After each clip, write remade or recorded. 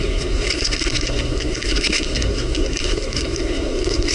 remade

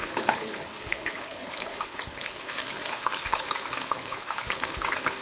remade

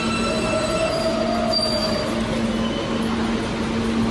recorded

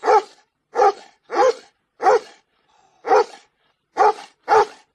recorded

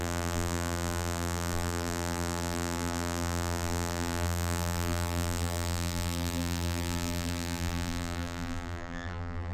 remade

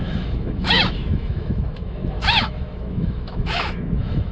remade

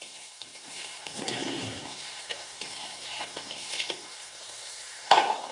remade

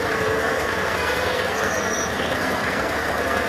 remade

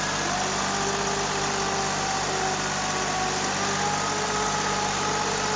recorded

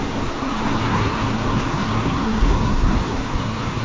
remade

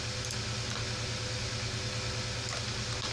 recorded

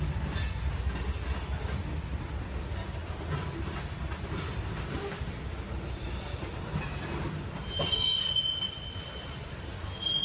recorded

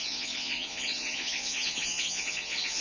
remade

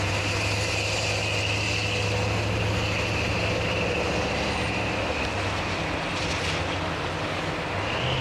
recorded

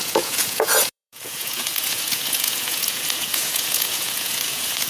remade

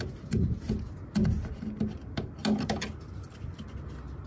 recorded